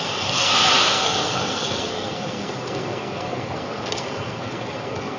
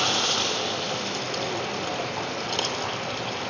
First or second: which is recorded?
second